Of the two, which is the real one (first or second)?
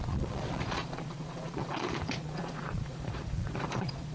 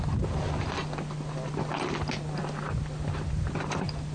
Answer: second